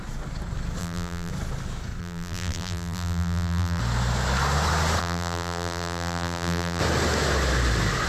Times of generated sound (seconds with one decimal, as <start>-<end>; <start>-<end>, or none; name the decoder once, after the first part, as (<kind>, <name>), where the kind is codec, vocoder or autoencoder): 0.8-1.3 (vocoder, BigVGAN v2); 2.0-3.8; 5.0-6.8